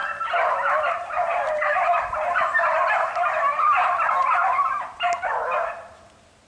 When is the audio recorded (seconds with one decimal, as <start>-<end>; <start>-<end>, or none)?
0.0-0.9